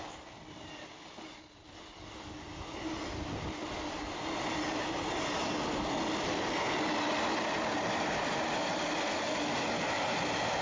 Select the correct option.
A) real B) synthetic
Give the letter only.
A